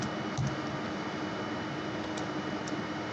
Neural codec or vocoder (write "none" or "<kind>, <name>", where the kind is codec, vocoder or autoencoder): vocoder, BigVGAN v2